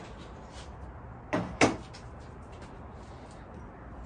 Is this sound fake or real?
real